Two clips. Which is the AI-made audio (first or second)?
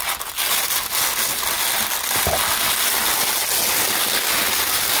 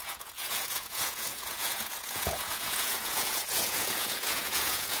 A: second